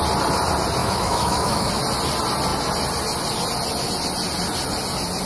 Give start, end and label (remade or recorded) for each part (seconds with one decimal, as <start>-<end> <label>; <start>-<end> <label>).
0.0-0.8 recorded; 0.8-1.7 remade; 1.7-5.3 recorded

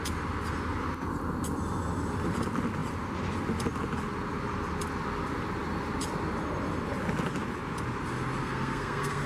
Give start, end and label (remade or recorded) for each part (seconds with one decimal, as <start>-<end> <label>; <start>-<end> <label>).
0.0-8.4 recorded; 8.4-9.3 remade

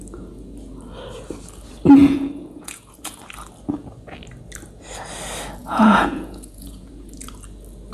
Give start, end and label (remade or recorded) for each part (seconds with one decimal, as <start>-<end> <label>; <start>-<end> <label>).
0.0-2.0 recorded; 2.0-3.2 remade; 3.2-5.6 recorded; 5.6-6.9 remade; 6.9-7.9 recorded

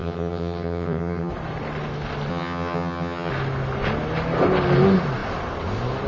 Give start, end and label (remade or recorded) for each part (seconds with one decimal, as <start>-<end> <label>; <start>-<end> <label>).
0.0-1.3 remade; 1.3-2.3 recorded; 2.3-3.3 remade; 3.3-6.1 recorded